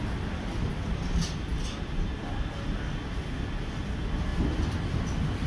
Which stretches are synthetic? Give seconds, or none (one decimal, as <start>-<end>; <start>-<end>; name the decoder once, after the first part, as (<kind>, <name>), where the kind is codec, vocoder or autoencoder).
4.3-5.0 (vocoder, BigVGAN v2)